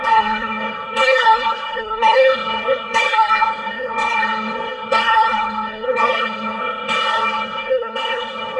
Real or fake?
fake